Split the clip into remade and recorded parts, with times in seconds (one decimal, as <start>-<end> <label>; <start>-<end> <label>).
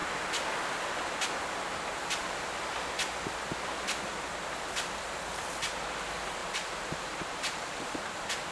0.0-6.4 recorded; 6.4-8.0 remade; 8.0-8.5 recorded